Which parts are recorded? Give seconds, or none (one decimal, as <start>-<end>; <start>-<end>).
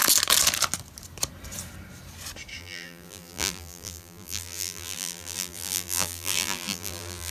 0.0-2.6